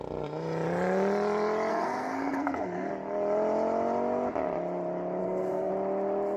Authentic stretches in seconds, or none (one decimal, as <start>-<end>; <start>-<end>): 0.0-1.7; 2.9-5.2; 5.7-6.4

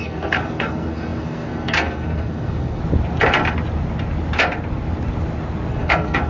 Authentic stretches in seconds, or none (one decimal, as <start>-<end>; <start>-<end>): 2.8-5.7

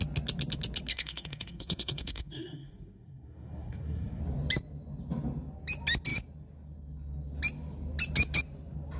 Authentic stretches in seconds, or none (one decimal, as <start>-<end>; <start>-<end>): 0.0-0.9; 4.2-9.0